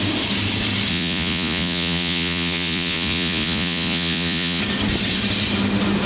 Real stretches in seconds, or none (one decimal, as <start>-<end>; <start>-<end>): 0.0-0.9; 4.6-6.1